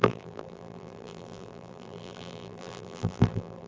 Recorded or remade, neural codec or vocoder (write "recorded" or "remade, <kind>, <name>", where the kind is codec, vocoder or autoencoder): remade, vocoder, BigVGAN v2